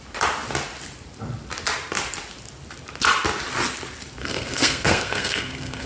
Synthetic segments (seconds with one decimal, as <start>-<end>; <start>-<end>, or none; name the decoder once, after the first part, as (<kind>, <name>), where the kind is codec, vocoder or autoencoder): 4.2-5.9 (codec, SNAC)